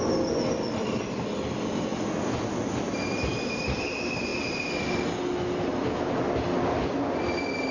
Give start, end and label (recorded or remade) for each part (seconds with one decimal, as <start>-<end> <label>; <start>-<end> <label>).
0.0-7.7 recorded